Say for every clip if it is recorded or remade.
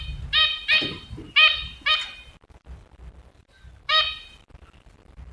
recorded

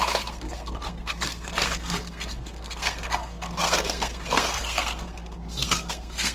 remade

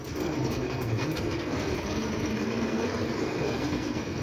remade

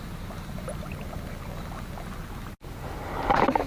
recorded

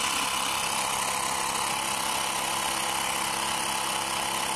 recorded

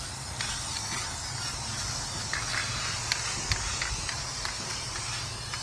recorded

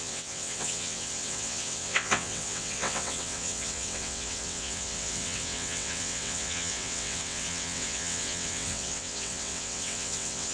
remade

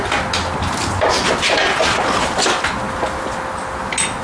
recorded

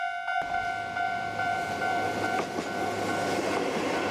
recorded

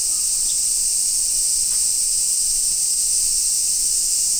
recorded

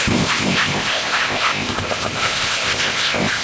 remade